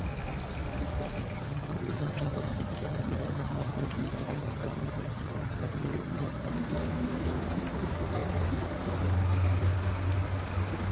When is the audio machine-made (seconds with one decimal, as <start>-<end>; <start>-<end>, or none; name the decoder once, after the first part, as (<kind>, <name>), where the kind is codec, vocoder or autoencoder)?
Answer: 1.2-6.5 (vocoder, HiFi-GAN)